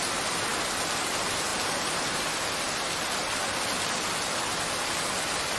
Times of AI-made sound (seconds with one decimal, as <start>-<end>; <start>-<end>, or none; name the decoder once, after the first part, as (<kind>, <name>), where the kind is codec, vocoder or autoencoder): none